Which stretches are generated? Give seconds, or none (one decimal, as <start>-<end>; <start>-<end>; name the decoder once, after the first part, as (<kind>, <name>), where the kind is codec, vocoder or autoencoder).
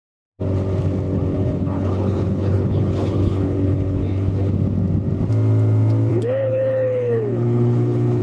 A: 1.3-4.5 (codec, HILCodec); 6.1-8.2